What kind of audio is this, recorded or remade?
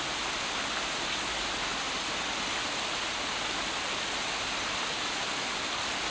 recorded